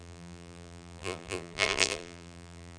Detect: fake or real fake